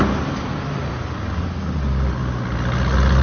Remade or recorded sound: recorded